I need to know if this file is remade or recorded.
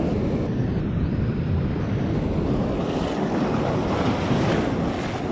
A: recorded